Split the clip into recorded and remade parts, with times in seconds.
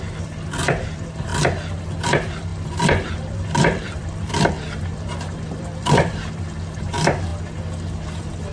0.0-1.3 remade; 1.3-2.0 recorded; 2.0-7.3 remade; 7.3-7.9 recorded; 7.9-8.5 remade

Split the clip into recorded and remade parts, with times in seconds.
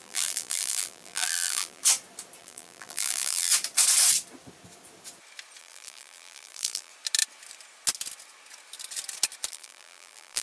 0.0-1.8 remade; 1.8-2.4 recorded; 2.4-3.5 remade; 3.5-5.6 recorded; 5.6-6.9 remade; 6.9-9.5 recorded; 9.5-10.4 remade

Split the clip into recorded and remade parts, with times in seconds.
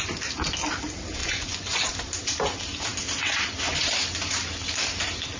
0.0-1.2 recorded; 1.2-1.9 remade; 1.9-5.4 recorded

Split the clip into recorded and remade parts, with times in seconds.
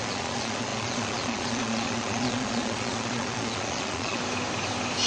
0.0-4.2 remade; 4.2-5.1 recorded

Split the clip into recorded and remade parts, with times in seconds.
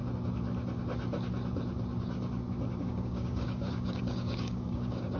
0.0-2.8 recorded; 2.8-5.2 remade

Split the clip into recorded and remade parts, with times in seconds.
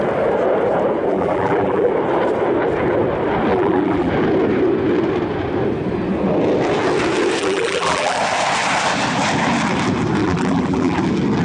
0.0-1.1 recorded; 1.1-1.9 remade; 1.9-3.5 recorded; 3.5-4.1 remade; 4.1-7.4 recorded; 7.4-8.2 remade; 8.2-10.2 recorded; 10.2-11.0 remade; 11.0-11.4 recorded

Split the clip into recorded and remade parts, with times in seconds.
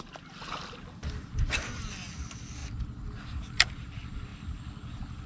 0.0-5.3 recorded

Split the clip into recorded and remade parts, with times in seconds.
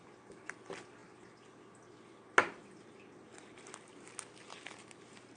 0.0-5.4 recorded